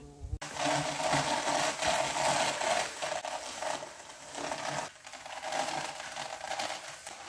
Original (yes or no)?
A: yes